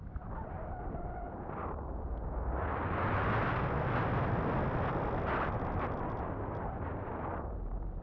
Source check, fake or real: real